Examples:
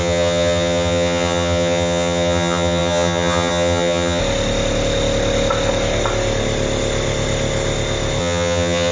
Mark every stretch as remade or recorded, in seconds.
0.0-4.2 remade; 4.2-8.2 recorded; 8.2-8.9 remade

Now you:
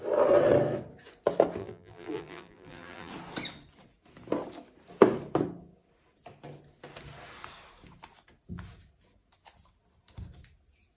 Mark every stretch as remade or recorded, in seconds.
0.0-1.6 recorded; 1.6-3.1 remade; 3.1-11.0 recorded

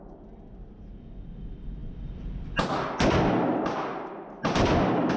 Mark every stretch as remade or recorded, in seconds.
0.0-5.2 recorded

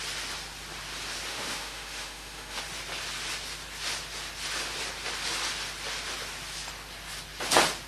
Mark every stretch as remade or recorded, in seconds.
0.0-1.3 recorded; 1.3-2.6 remade; 2.6-7.9 recorded

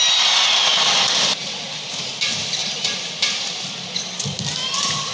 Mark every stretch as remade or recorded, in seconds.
0.0-0.7 recorded; 0.7-1.9 remade; 1.9-2.6 recorded; 2.6-4.1 remade; 4.1-5.1 recorded

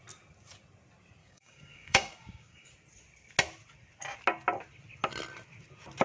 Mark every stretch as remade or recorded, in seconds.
0.0-1.2 recorded; 1.2-2.7 remade; 2.7-6.0 recorded

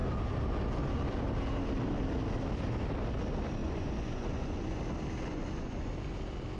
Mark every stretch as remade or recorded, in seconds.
0.0-3.6 recorded; 3.6-4.8 remade; 4.8-5.3 recorded; 5.3-5.9 remade; 5.9-6.6 recorded